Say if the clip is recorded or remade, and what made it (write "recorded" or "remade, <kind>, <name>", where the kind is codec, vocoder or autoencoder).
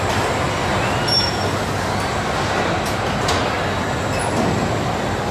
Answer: recorded